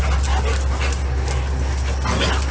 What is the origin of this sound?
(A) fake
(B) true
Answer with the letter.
B